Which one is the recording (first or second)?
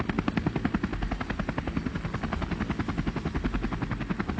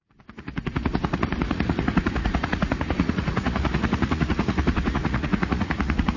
first